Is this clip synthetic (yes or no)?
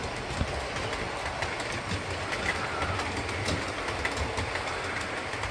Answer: no